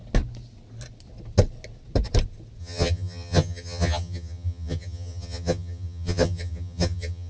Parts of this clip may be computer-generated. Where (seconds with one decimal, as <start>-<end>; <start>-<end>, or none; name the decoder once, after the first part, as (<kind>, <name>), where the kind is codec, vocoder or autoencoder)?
2.6-7.3 (vocoder, HiFi-GAN)